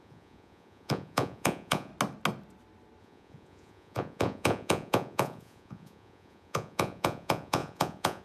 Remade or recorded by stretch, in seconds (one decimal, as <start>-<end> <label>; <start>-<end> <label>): 0.0-1.9 remade; 1.9-3.0 recorded; 3.0-8.2 remade